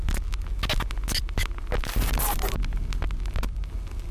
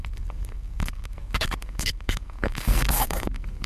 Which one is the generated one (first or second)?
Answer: second